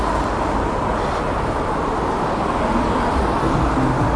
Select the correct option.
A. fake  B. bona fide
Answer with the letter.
B